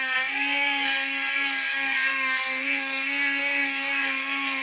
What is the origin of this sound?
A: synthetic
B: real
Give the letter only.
A